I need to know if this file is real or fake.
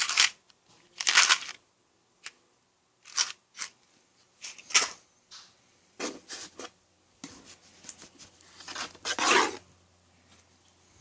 real